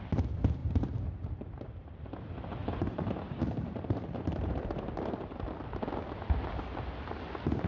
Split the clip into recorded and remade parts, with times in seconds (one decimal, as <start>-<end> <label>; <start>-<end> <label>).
0.0-0.6 recorded; 0.6-5.2 remade; 5.2-7.7 recorded

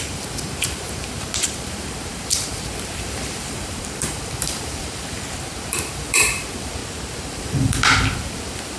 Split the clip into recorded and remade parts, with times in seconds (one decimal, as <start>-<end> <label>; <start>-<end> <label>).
0.0-6.8 remade; 6.8-7.3 recorded; 7.3-8.8 remade

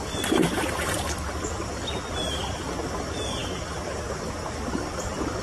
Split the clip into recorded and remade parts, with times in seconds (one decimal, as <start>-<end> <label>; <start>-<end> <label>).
0.0-0.4 recorded; 0.4-1.1 remade; 1.1-5.4 recorded

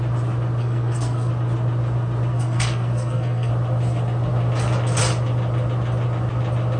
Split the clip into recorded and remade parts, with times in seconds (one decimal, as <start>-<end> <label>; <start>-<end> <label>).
0.0-0.6 recorded; 0.6-1.3 remade; 1.3-2.3 recorded; 2.3-3.5 remade; 3.5-6.8 recorded

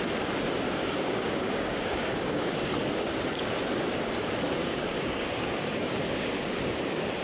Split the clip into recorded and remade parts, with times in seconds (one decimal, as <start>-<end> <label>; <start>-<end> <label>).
0.0-0.8 recorded; 0.8-2.7 remade; 2.7-4.6 recorded; 4.6-6.3 remade; 6.3-7.2 recorded

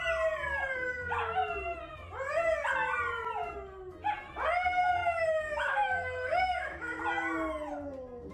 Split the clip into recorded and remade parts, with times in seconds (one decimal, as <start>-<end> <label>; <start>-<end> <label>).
0.0-5.0 recorded; 5.0-7.0 remade; 7.0-8.3 recorded

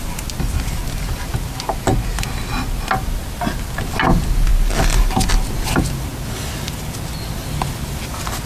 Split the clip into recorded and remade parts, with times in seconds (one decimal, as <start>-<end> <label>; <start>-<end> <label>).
0.0-8.5 recorded

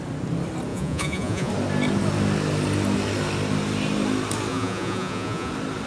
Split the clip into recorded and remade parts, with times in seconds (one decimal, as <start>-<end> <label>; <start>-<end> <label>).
0.0-0.7 recorded; 0.7-1.5 remade; 1.5-4.5 recorded; 4.5-5.5 remade; 5.5-5.9 recorded